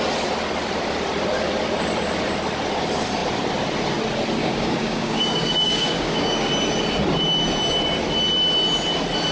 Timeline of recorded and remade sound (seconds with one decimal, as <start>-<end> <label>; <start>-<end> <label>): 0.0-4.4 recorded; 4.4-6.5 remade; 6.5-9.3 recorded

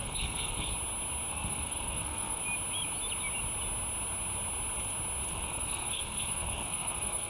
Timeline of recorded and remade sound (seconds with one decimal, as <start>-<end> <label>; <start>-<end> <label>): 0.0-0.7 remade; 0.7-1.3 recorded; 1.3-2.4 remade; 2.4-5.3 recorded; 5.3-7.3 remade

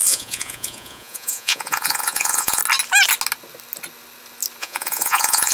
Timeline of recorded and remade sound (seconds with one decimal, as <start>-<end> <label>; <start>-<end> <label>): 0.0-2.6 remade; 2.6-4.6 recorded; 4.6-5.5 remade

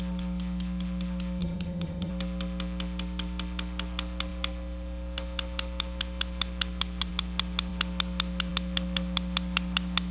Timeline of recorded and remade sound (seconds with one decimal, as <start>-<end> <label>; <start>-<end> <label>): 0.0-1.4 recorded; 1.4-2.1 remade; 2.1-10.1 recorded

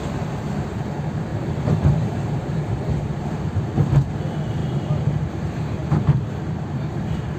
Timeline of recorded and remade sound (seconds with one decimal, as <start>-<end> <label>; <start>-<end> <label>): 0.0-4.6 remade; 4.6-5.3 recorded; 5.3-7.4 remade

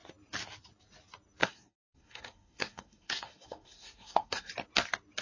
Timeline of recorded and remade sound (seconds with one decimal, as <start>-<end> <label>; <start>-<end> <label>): 0.0-1.4 recorded; 1.4-4.5 remade; 4.5-5.2 recorded